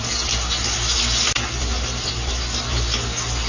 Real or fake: real